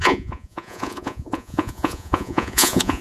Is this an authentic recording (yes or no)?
no